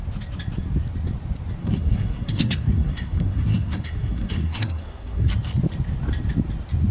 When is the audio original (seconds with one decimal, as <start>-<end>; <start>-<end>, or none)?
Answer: 0.0-1.6; 5.3-6.9